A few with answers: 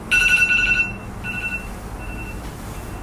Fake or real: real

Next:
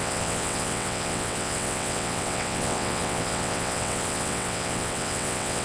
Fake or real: fake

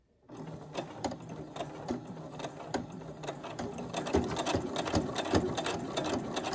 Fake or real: real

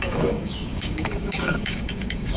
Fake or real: fake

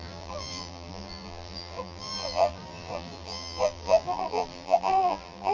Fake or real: fake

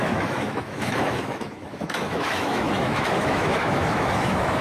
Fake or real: fake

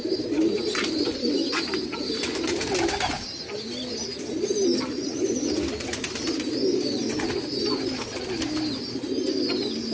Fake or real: real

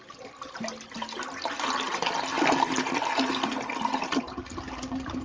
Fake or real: real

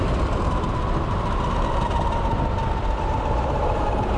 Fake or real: real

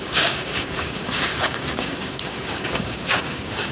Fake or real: fake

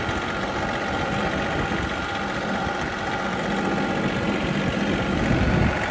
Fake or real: fake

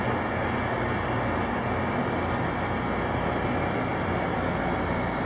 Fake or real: real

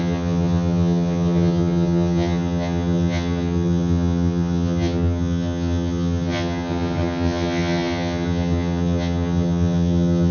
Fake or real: fake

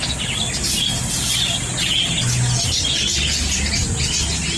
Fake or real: real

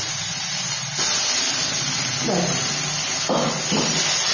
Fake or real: real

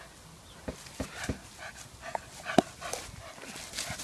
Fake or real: real